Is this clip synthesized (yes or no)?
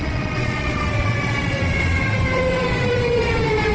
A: yes